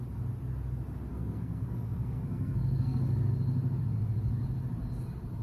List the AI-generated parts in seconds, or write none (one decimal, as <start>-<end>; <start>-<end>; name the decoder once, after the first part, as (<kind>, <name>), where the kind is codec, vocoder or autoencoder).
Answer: 1.1-3.0 (codec, SNAC)